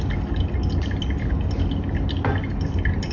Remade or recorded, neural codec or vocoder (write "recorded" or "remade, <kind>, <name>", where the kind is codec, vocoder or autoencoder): recorded